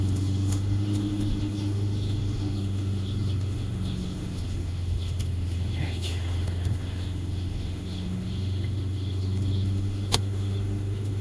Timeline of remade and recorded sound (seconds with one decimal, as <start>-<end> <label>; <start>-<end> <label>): 0.0-11.2 remade